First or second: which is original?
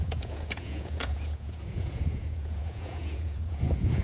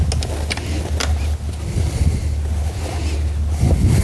second